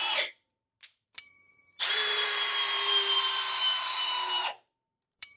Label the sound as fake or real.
fake